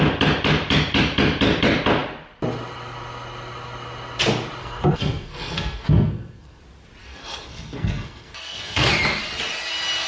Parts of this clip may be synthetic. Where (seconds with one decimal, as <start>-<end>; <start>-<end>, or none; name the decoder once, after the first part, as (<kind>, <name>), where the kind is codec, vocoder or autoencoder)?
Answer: 4.6-6.6 (codec, SNAC); 7.0-8.9